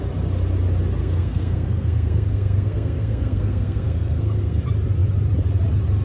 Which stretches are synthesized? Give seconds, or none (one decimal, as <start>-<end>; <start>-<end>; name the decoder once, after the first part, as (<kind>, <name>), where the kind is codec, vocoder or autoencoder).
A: 1.0-4.6 (codec, SNAC)